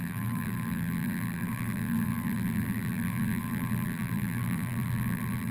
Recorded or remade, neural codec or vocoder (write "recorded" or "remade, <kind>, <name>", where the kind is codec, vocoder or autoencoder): remade, vocoder, BigVGAN v2